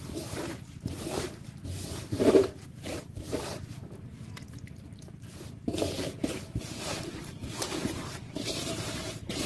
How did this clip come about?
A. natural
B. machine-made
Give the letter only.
B